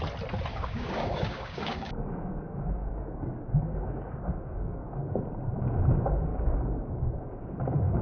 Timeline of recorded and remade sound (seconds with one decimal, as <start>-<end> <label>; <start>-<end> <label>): 0.0-0.5 recorded; 0.5-5.1 remade; 5.1-6.3 recorded; 6.3-8.0 remade

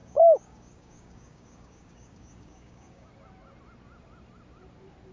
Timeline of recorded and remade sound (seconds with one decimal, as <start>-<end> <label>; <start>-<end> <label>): 0.0-3.1 remade; 3.1-5.1 recorded